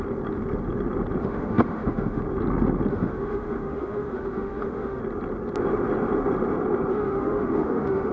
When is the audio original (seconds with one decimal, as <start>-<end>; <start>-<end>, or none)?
0.0-1.2; 2.2-2.9; 5.0-6.9